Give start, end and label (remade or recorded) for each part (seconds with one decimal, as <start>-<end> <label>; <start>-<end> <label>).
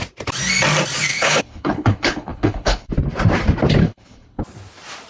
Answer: 0.0-1.1 recorded; 1.1-2.9 remade; 2.9-3.8 recorded; 3.8-4.4 remade; 4.4-5.1 recorded